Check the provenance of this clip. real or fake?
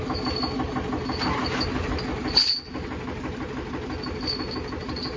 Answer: real